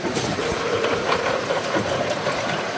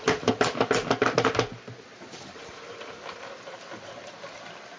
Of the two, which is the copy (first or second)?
first